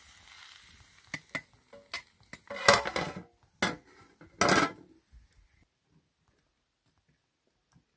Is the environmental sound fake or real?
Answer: real